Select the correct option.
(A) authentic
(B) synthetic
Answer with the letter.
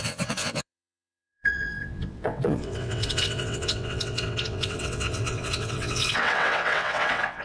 B